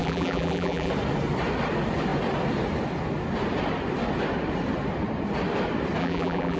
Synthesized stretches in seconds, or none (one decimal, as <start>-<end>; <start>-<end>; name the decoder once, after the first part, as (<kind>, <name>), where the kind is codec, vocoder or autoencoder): 0.0-0.9 (vocoder, BigVGAN v2); 6.0-6.6